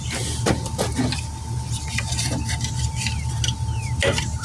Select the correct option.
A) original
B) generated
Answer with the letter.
A